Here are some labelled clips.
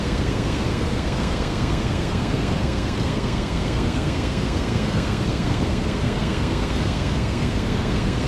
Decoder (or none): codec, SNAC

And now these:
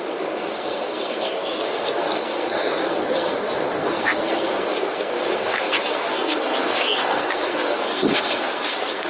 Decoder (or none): codec, SNAC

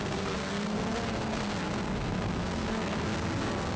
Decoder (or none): codec, SNAC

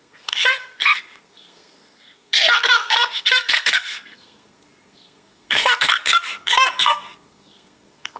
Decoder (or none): codec, SNAC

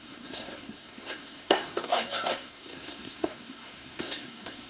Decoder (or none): codec, SNAC